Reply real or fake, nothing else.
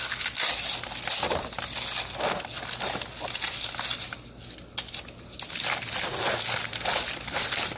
real